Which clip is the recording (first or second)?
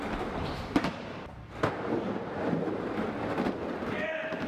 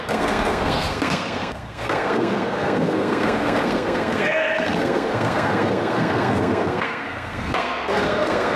first